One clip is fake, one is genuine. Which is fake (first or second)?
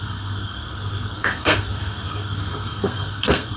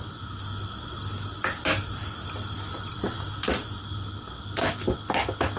first